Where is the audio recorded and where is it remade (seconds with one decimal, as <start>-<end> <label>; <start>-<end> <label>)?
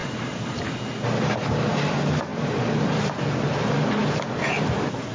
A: 0.0-1.4 remade; 1.4-2.3 recorded; 2.3-2.8 remade; 2.8-5.1 recorded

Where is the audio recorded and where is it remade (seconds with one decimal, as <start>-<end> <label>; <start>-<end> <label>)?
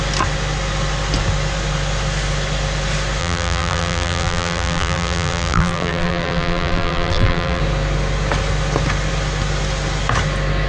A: 0.0-3.2 recorded; 3.2-7.6 remade; 7.6-10.7 recorded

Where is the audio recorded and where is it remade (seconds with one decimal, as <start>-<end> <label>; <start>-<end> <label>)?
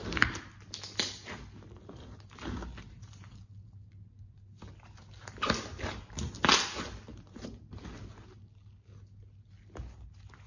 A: 0.0-7.1 recorded; 7.1-7.8 remade; 7.8-10.5 recorded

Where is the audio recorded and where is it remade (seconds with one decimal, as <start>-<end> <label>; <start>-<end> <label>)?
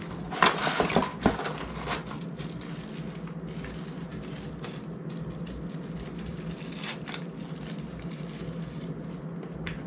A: 0.0-4.1 recorded; 4.1-5.0 remade; 5.0-6.3 recorded; 6.3-7.3 remade; 7.3-9.9 recorded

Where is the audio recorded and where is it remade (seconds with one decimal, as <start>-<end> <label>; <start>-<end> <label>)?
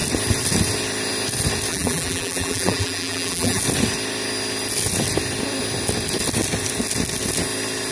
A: 0.0-1.7 recorded; 1.7-3.6 remade; 3.6-7.9 recorded